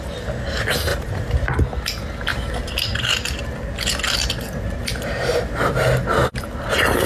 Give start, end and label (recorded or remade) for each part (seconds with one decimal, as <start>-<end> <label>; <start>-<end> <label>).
0.0-0.9 recorded; 0.9-1.5 remade; 1.5-2.3 recorded; 2.3-3.1 remade; 3.1-4.8 recorded; 4.8-5.6 remade; 5.6-7.1 recorded